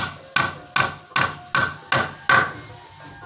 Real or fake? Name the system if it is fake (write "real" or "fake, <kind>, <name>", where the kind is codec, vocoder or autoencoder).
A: real